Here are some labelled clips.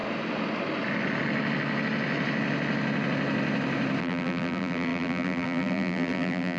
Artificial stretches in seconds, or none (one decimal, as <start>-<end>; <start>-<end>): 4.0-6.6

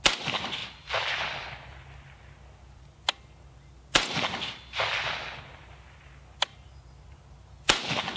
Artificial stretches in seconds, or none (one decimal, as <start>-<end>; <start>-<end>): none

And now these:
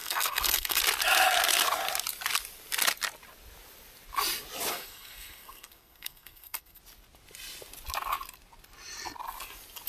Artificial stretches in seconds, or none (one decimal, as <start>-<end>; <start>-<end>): 0.0-0.8; 4.7-6.8

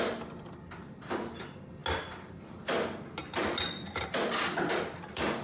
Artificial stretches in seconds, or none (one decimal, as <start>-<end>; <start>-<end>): none

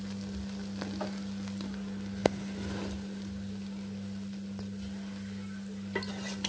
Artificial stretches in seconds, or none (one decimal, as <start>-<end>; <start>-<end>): none